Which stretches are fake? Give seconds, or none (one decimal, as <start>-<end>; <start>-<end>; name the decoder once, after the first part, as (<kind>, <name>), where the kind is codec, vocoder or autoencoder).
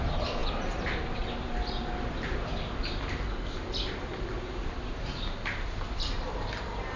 none